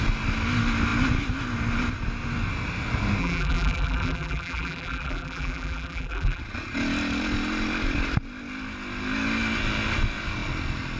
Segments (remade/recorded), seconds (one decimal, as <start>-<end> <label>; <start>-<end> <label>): 0.0-3.2 recorded; 3.2-6.4 remade; 6.4-11.0 recorded